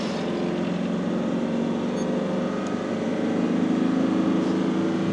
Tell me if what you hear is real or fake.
real